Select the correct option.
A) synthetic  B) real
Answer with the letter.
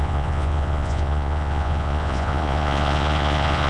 A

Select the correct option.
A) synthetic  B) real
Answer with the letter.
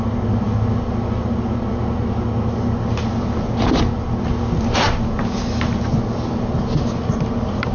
B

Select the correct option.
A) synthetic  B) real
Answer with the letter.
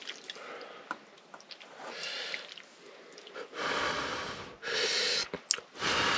B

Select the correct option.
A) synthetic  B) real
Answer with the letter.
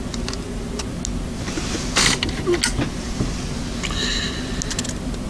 B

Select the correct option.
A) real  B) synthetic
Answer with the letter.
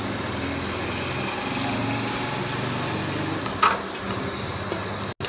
A